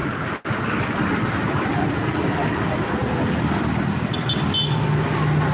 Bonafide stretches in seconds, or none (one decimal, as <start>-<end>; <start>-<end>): 0.0-5.5